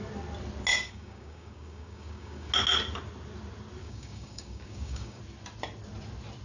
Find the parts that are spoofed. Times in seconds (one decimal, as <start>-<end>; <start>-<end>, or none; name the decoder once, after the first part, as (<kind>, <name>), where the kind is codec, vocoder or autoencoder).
0.7-2.5 (codec, DAC); 3.8-5.2